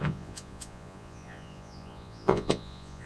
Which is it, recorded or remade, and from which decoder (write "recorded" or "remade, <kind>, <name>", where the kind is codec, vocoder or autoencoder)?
remade, vocoder, Vocos